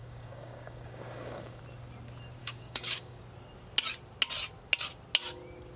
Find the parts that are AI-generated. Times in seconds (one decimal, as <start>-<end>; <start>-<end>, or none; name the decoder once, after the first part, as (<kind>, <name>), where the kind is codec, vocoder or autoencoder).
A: 0.0-1.6 (codec, DAC); 2.4-3.2